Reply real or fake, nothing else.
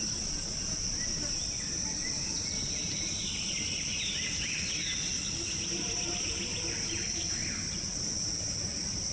real